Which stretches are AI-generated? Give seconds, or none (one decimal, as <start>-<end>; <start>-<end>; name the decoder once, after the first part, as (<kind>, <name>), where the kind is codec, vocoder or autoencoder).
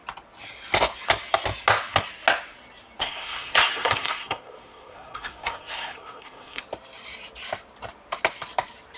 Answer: 3.0-6.6 (codec, SNAC)